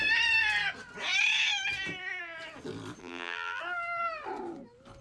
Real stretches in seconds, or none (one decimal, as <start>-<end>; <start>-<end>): 0.0-3.0; 3.6-5.0